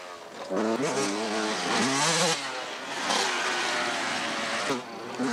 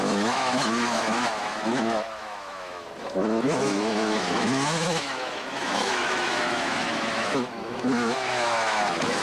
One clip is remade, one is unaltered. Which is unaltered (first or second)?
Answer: first